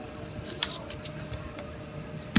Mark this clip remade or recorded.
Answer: recorded